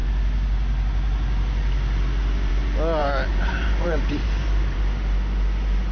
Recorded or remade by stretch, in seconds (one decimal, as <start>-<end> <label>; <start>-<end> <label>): 0.0-3.0 recorded; 3.0-4.8 remade; 4.8-5.9 recorded